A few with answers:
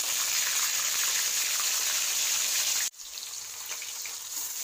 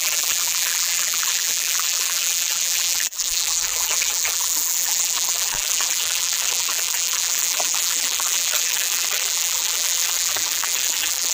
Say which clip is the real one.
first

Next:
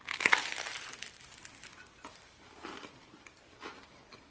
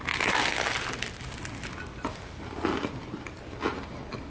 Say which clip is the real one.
second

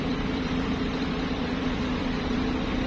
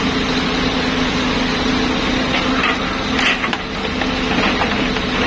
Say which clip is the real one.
second